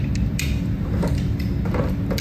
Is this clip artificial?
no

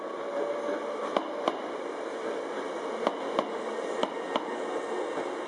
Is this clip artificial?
no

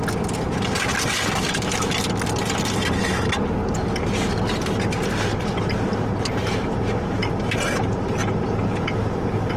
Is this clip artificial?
no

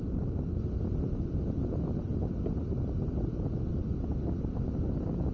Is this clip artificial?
no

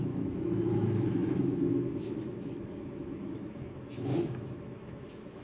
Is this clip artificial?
yes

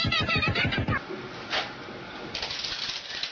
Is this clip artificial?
no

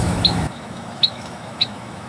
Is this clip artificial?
yes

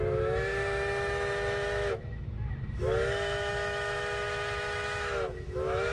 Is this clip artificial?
yes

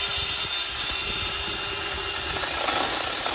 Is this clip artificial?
no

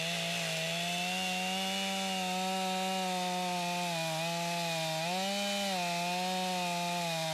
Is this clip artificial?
no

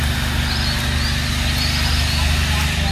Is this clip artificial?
no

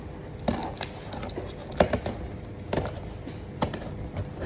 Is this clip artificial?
no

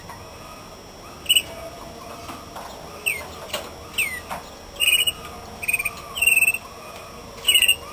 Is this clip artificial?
no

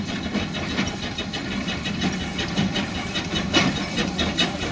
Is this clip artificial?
no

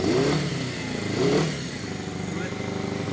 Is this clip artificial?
no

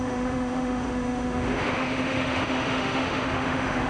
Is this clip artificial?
yes